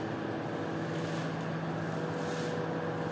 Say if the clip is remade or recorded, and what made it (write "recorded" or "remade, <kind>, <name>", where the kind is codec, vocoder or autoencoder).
recorded